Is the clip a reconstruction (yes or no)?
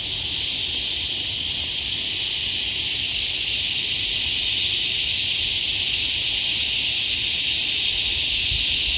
no